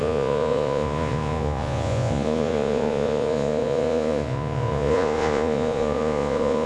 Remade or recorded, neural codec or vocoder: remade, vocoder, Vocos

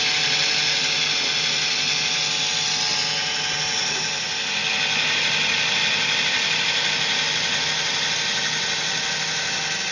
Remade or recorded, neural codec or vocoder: recorded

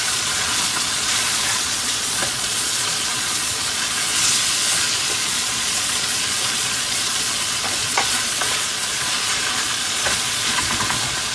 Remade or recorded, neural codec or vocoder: remade, vocoder, Vocos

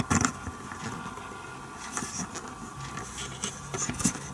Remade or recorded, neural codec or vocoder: recorded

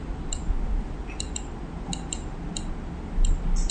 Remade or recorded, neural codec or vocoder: recorded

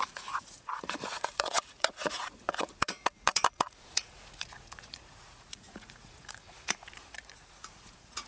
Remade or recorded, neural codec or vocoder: remade, vocoder, Vocos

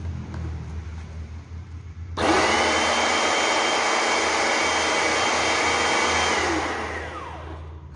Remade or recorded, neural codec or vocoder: recorded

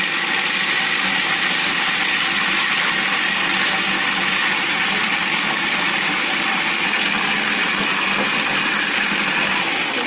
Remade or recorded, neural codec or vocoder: recorded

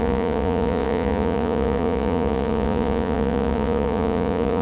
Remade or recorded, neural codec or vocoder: remade, vocoder, Vocos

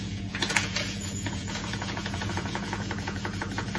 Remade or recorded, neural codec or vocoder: remade, vocoder, Vocos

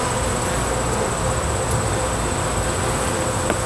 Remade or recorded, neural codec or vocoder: recorded